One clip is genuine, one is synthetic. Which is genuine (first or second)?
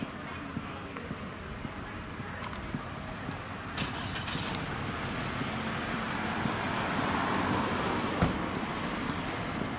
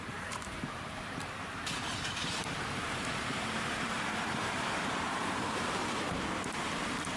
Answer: first